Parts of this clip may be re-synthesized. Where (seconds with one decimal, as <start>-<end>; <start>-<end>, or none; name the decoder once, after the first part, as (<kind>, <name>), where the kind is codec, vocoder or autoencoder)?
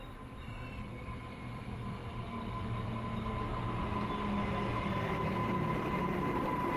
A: 0.0-2.0 (vocoder, BigVGAN v2); 6.1-6.8